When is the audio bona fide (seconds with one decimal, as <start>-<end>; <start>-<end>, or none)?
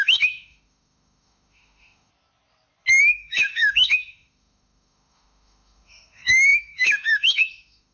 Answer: 2.1-3.0